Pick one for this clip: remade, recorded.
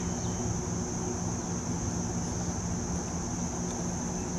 recorded